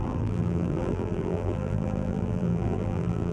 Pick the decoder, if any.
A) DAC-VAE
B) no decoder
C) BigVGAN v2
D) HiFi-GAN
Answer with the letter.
C